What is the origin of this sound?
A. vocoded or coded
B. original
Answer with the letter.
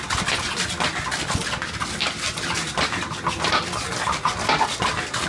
B